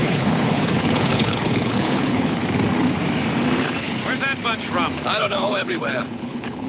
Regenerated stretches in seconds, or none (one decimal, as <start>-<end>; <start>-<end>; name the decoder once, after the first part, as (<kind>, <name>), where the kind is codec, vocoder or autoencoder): 0.0-2.4 (codec, HILCodec); 3.6-4.0; 5.2-6.7